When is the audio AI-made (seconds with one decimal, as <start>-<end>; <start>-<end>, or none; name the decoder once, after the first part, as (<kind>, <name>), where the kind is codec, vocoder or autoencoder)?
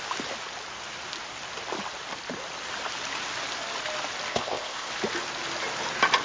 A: 4.3-4.9 (codec, ZipCodec)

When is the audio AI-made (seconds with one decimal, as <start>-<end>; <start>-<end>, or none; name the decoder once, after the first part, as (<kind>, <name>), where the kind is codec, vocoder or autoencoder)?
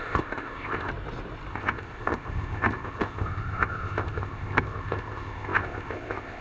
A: 0.0-0.9 (codec, ZipCodec); 1.5-6.4